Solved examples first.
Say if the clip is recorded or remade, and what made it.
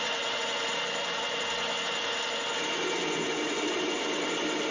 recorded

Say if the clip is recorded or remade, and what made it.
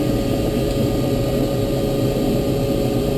recorded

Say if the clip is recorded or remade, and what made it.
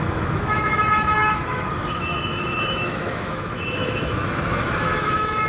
remade, autoencoder, DAC-VAE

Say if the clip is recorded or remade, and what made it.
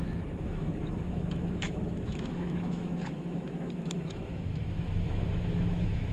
remade, autoencoder, DAC-VAE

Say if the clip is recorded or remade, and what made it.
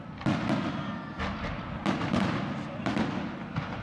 recorded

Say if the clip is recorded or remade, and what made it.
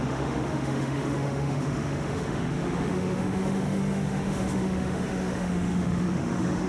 remade, autoencoder, DAC-VAE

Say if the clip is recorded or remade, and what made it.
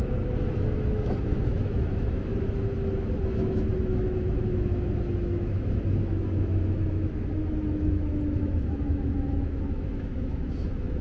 remade, autoencoder, DAC-VAE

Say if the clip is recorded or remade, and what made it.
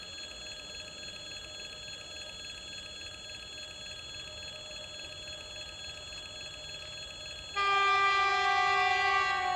recorded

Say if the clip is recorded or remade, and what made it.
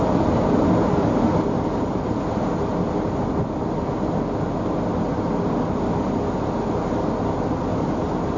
recorded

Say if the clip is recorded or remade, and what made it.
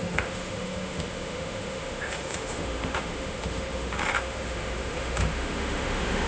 remade, autoencoder, DAC-VAE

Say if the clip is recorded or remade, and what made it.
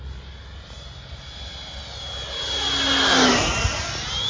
recorded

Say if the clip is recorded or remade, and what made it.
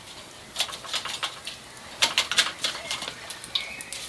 recorded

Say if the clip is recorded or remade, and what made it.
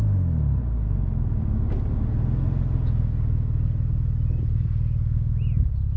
recorded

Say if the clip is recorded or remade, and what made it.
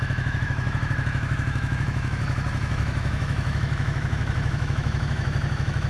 remade, autoencoder, DAC-VAE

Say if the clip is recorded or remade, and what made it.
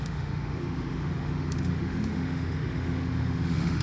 remade, autoencoder, DAC-VAE